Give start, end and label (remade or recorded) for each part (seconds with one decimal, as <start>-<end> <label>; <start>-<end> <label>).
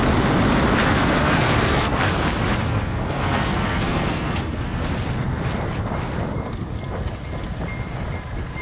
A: 0.0-0.8 recorded; 0.8-2.0 remade; 2.0-2.7 recorded; 2.7-4.8 remade; 4.8-8.6 recorded